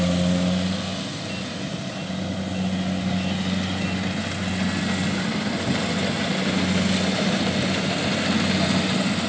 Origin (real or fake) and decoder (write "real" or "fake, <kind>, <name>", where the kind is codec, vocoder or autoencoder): real